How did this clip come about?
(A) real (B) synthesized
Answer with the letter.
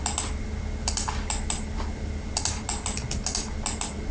A